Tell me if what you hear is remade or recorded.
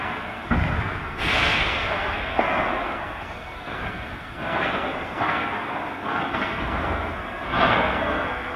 remade